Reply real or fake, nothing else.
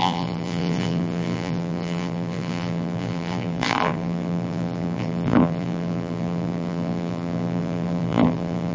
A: fake